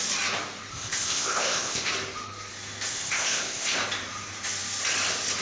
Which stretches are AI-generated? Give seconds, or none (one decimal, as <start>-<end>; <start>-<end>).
0.7-1.9; 2.9-3.8